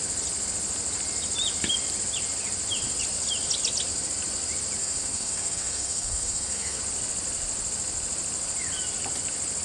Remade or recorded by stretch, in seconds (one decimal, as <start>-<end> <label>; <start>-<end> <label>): 0.0-4.8 recorded; 4.8-6.8 remade; 6.8-9.6 recorded